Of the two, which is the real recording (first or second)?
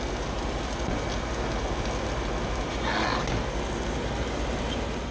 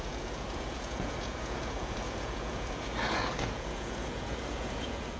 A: first